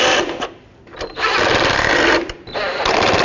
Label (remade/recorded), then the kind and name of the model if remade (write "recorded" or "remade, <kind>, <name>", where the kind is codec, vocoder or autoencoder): remade, vocoder, BigVGAN v2